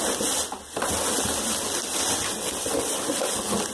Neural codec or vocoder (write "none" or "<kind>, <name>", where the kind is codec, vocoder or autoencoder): none